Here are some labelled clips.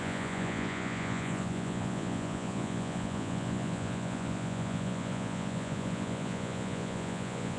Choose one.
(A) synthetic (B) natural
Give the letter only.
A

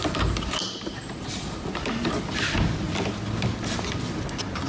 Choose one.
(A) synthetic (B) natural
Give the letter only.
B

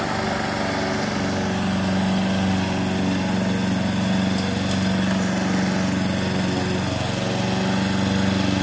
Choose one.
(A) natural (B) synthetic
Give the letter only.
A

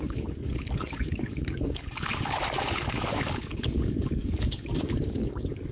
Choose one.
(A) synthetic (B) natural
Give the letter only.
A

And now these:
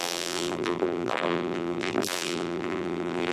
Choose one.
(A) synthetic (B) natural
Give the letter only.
A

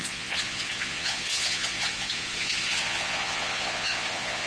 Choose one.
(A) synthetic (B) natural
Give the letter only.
A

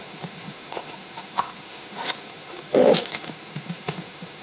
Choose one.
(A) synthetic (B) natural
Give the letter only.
A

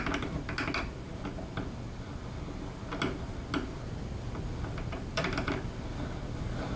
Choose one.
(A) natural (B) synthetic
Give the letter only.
A